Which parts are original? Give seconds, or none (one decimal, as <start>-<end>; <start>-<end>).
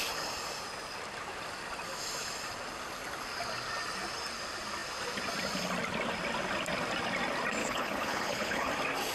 0.0-7.6; 8.7-9.1